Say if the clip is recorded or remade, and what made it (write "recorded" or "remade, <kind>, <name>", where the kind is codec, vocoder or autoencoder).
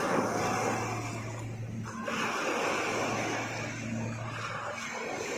recorded